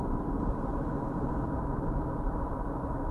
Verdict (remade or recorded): remade